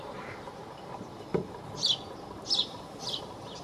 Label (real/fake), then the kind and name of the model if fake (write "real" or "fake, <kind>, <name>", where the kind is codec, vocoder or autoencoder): fake, vocoder, BigVGAN v2